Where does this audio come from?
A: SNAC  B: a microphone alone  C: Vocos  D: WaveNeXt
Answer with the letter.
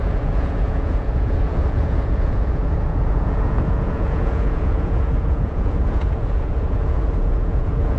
C